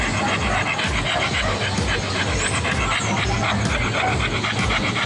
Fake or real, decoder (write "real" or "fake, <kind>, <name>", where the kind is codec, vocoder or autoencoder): real